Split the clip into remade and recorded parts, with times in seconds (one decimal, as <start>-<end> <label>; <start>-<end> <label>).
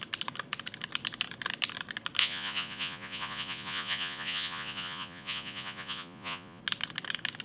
0.0-2.2 recorded; 2.2-6.6 remade; 6.6-7.4 recorded